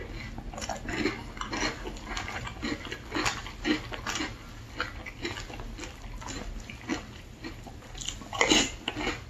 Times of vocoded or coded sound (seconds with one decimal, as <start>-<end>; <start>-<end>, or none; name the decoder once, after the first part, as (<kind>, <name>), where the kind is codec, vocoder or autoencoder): 6.9-7.7 (vocoder, BigVGAN v2)